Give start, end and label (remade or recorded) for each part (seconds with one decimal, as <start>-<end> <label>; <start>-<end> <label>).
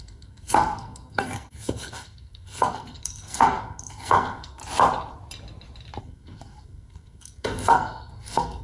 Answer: 0.0-4.6 remade; 4.6-6.0 recorded; 6.0-8.6 remade